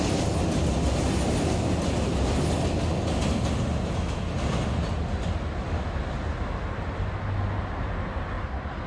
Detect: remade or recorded recorded